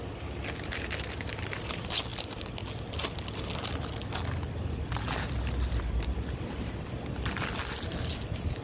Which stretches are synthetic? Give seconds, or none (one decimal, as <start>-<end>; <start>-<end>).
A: none